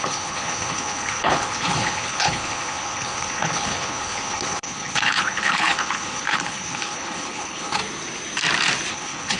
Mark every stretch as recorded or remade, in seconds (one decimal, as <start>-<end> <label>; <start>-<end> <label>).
0.0-7.8 remade; 7.8-8.9 recorded; 8.9-9.4 remade